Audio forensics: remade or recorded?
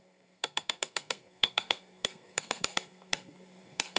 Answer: remade